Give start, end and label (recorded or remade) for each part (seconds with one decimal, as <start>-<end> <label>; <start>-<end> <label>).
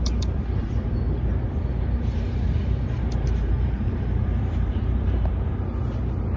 0.0-1.7 recorded; 1.7-5.5 remade; 5.5-6.4 recorded